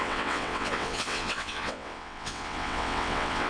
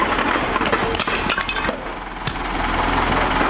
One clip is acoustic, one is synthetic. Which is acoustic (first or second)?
second